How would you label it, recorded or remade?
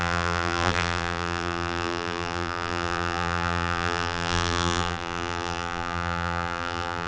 remade